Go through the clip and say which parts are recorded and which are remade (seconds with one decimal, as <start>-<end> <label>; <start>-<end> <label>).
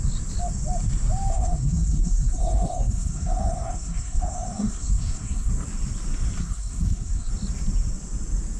0.0-1.3 recorded; 1.3-5.5 remade; 5.5-6.4 recorded; 6.4-7.3 remade; 7.3-8.6 recorded